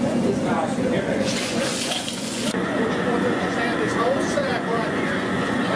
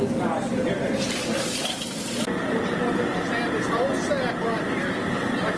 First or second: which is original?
second